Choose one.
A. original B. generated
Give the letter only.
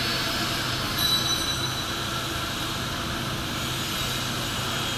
A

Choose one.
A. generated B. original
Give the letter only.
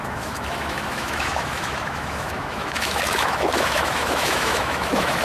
A